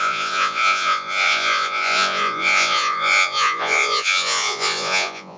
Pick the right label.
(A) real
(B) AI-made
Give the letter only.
B